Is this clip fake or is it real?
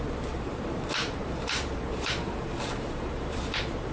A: fake